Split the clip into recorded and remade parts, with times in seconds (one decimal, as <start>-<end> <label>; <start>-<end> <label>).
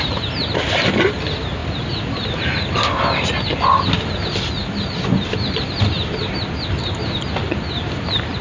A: 0.0-8.4 recorded